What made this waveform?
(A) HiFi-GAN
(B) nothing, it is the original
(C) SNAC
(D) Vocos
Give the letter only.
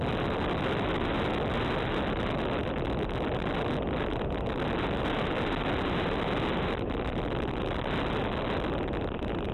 B